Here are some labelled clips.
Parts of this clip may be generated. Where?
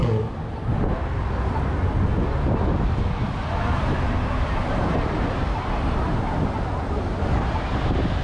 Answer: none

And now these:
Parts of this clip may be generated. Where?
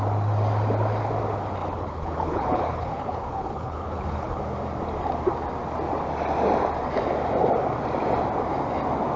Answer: 1.6-4.4 (codec, HILCodec)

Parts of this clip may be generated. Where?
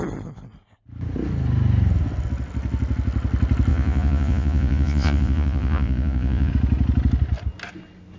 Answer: 3.7-6.5 (vocoder, Vocos)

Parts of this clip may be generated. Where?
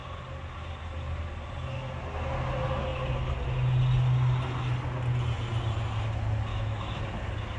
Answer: 6.5-7.0 (autoencoder, DAC-VAE)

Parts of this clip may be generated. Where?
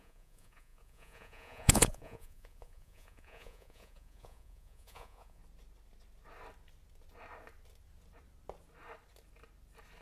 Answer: 0.0-5.4 (vocoder, Vocos)